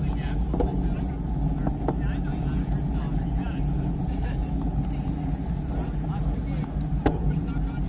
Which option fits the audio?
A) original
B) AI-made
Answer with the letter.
A